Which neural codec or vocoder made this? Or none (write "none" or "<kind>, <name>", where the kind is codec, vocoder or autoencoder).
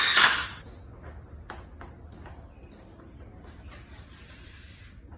none